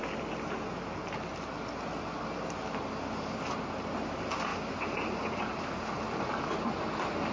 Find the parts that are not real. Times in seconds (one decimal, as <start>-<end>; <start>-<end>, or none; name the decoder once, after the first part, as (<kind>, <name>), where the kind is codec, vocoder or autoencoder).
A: none